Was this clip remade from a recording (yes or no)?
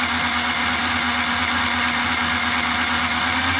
no